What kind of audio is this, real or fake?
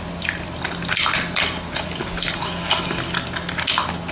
real